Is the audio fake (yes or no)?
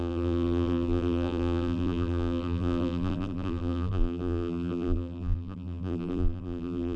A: yes